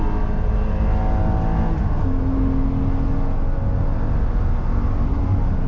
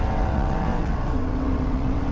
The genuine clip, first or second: first